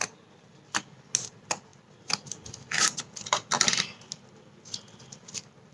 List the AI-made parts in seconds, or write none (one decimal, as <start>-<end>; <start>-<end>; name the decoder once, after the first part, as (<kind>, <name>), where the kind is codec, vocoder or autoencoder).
none